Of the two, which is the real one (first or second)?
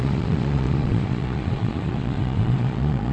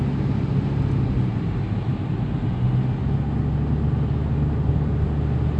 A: second